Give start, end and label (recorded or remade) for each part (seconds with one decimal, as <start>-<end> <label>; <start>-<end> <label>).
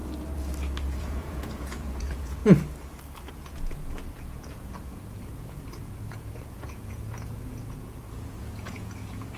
0.0-1.0 recorded; 1.0-2.4 remade; 2.4-3.3 recorded; 3.3-9.4 remade